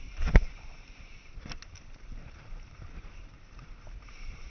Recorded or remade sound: remade